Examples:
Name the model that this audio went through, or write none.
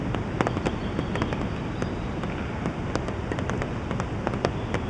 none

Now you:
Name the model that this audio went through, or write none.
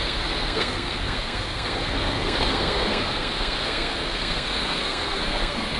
codec, SNAC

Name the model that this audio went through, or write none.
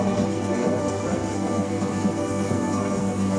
codec, SNAC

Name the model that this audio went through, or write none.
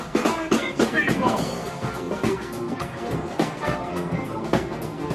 codec, SNAC